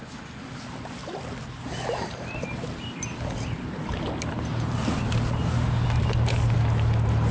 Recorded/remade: recorded